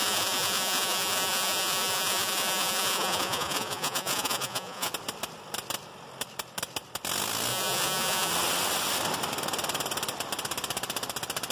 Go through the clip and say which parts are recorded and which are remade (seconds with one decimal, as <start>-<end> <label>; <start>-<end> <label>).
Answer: 0.0-4.9 remade; 4.9-7.5 recorded; 7.5-8.3 remade; 8.3-11.5 recorded